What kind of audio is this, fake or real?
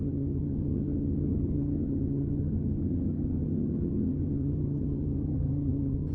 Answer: fake